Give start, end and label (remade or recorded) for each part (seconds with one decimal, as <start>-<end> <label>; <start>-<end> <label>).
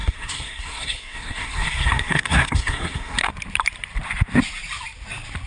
0.0-3.3 remade; 3.3-5.5 recorded